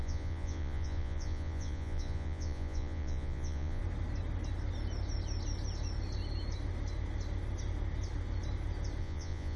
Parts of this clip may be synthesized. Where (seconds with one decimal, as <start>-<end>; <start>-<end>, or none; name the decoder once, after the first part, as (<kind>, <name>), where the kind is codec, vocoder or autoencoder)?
0.0-3.8 (vocoder, Vocos); 9.0-9.6